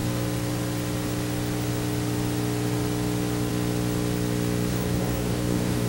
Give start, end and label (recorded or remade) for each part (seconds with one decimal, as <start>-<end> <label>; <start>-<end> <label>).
0.0-4.7 recorded; 4.7-5.9 remade